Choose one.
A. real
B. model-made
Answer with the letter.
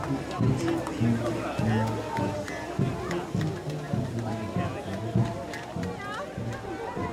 A